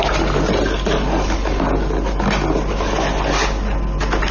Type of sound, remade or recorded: recorded